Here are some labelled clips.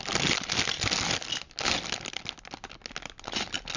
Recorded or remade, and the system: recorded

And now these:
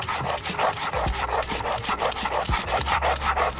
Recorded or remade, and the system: remade, vocoder, BigVGAN v2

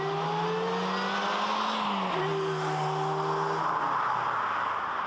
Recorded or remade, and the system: recorded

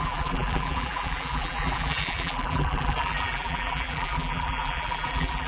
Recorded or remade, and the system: remade, vocoder, BigVGAN v2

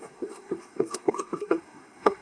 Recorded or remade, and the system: remade, codec, SNAC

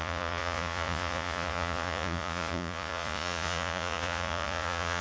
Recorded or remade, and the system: remade, vocoder, Vocos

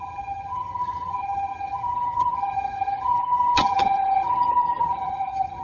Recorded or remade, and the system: remade, vocoder, HiFi-GAN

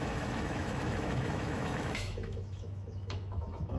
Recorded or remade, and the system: remade, autoencoder, DAC-VAE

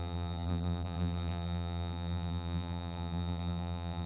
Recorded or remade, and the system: remade, vocoder, BigVGAN v2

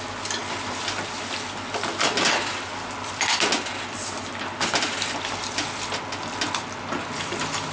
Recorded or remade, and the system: recorded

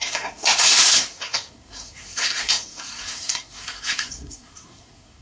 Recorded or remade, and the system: remade, codec, SNAC